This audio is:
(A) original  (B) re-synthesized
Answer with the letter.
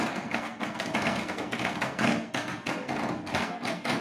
B